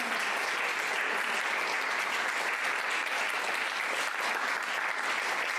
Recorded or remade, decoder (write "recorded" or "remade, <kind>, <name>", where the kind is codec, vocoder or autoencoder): recorded